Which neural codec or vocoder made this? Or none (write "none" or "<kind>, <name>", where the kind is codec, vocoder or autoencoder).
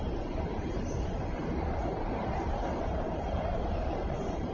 vocoder, BigVGAN v2